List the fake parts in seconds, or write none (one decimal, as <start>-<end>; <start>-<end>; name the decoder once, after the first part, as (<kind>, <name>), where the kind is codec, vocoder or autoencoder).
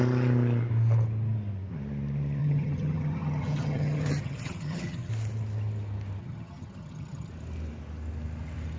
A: 2.4-5.1 (vocoder, HiFi-GAN); 6.2-7.3